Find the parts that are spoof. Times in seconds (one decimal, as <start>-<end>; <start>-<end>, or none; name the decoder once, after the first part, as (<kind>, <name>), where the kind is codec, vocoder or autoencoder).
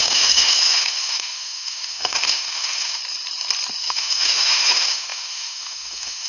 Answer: 0.0-3.0 (autoencoder, DAC-VAE); 3.8-6.3